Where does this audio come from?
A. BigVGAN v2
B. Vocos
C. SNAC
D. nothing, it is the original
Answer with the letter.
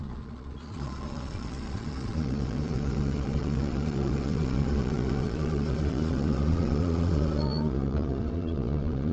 B